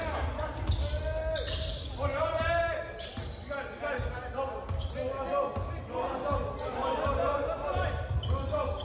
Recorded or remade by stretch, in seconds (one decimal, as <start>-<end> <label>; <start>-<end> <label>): 0.0-2.1 recorded; 2.1-4.0 remade; 4.0-8.8 recorded